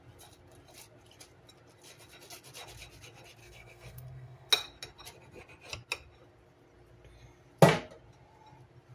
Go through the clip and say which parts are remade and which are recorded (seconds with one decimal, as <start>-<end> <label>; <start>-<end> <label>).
0.0-3.4 recorded; 3.4-4.5 remade; 4.5-8.9 recorded

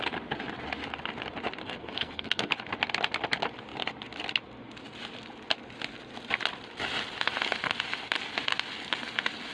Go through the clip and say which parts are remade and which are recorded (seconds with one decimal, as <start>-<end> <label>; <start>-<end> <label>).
0.0-1.6 recorded; 1.6-2.5 remade; 2.5-9.5 recorded